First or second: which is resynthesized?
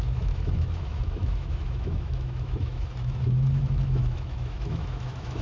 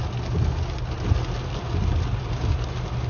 first